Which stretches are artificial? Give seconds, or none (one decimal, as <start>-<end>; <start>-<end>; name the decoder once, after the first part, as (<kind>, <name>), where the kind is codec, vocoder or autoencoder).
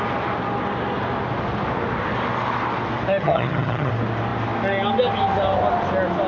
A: 3.2-3.9 (vocoder, HiFi-GAN)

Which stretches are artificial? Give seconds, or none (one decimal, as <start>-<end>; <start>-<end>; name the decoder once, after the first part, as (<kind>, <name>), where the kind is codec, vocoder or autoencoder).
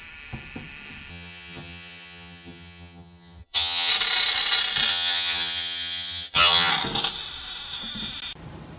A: 1.1-3.9 (vocoder, HiFi-GAN); 4.9-6.7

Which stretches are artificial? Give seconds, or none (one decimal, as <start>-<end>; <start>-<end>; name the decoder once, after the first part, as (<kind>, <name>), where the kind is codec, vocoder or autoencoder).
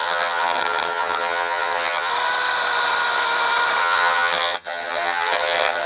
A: 0.0-2.1 (vocoder, HiFi-GAN); 3.8-5.9